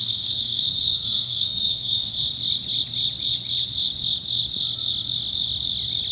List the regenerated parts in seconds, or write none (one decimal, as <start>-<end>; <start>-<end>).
0.0-2.1